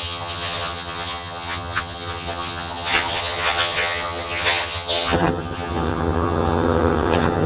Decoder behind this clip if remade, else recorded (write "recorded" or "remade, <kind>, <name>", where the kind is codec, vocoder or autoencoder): remade, vocoder, HiFi-GAN